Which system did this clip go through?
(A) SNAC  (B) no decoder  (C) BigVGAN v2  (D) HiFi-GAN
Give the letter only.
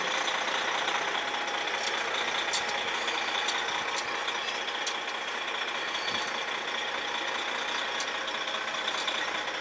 B